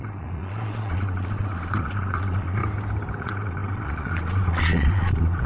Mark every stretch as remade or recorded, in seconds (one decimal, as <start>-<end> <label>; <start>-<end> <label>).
0.0-2.6 remade; 2.6-3.2 recorded; 3.2-5.5 remade